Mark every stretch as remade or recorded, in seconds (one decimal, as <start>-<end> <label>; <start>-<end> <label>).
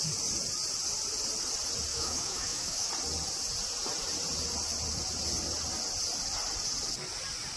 0.0-1.9 recorded; 1.9-2.9 remade; 2.9-7.6 recorded